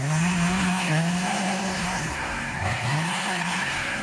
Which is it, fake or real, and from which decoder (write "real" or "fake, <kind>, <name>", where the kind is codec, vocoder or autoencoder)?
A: fake, codec, SNAC